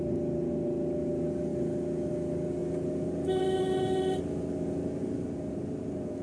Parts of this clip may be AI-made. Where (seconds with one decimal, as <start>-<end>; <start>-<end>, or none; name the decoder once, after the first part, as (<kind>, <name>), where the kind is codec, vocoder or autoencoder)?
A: none